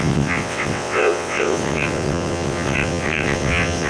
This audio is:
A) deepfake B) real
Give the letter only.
A